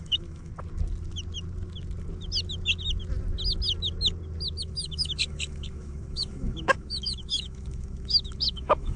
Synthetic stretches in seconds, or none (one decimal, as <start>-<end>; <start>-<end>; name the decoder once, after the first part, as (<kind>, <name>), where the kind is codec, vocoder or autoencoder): 0.0-0.5 (autoencoder, DAC-VAE); 4.6-9.0